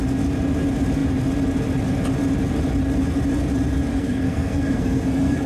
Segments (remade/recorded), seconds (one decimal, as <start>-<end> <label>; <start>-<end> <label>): 0.0-3.9 recorded; 3.9-5.5 remade